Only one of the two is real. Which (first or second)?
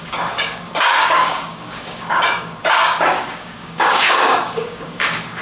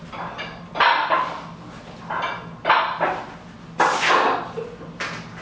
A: second